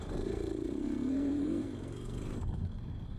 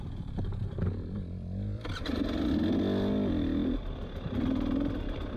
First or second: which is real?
second